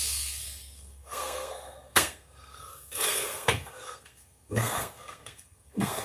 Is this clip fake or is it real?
fake